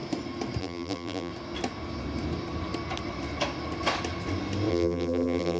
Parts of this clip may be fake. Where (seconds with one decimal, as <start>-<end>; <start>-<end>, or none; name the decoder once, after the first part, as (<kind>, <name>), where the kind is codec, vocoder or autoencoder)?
0.6-1.3 (vocoder, BigVGAN v2); 4.7-5.6